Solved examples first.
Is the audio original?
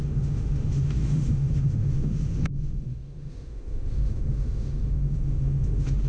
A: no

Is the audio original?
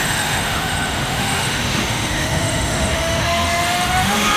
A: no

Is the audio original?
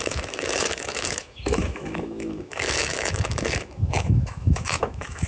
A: no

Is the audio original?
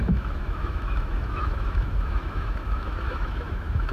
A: no